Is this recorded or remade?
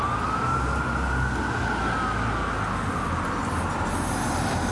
recorded